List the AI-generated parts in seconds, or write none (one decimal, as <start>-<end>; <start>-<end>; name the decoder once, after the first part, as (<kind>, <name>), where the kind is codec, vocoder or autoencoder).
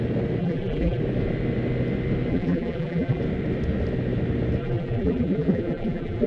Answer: 0.4-1.0 (vocoder, BigVGAN v2); 2.3-3.2; 4.6-6.3